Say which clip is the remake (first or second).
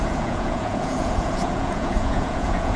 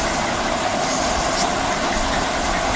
first